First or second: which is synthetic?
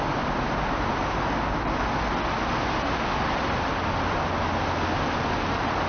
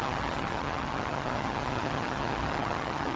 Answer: second